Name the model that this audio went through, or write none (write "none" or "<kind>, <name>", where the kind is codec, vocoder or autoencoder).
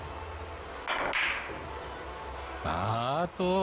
none